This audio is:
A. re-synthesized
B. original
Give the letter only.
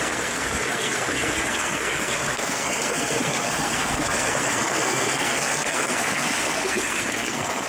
A